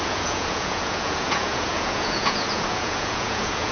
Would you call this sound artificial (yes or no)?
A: yes